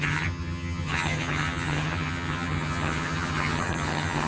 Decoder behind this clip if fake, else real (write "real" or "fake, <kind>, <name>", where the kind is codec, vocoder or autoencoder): fake, vocoder, HiFi-GAN